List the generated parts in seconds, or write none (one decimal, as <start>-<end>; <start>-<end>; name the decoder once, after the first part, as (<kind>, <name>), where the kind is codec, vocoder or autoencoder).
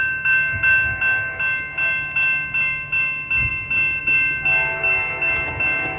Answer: none